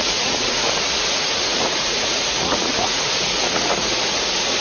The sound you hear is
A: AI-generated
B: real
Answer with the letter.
A